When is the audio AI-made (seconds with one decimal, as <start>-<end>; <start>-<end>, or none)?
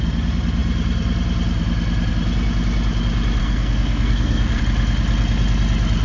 3.4-4.6